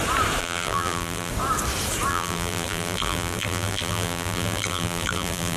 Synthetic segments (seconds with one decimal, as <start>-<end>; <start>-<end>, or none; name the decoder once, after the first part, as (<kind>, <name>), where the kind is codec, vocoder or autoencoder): 0.4-1.3 (vocoder, BigVGAN v2); 2.1-5.6